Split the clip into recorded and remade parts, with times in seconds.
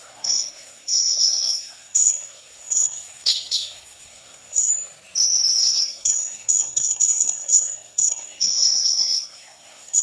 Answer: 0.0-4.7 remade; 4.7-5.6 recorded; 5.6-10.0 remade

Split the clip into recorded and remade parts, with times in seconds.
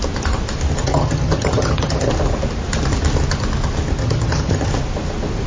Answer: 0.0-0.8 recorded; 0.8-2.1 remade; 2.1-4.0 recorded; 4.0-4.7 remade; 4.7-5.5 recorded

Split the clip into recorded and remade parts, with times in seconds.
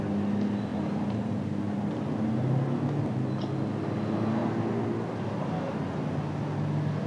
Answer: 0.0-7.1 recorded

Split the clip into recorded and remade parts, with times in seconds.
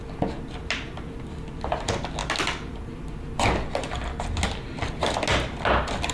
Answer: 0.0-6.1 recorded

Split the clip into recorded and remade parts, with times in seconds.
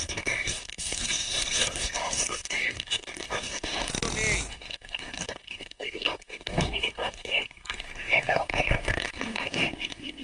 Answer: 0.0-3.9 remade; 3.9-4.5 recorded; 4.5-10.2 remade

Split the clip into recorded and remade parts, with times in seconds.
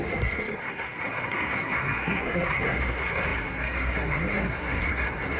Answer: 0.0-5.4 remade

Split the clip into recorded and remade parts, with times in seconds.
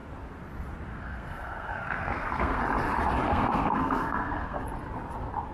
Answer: 0.0-0.9 recorded; 0.9-2.6 remade; 2.6-3.3 recorded; 3.3-4.6 remade; 4.6-5.5 recorded